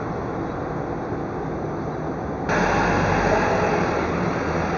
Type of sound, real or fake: real